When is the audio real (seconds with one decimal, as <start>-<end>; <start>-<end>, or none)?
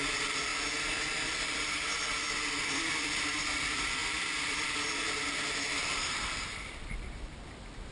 0.5-2.6; 4.0-5.7